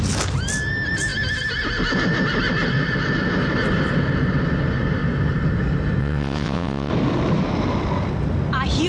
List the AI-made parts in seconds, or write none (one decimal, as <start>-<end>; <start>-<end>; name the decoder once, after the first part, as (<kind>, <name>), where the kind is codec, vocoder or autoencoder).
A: 6.0-6.9 (vocoder, WaveNeXt)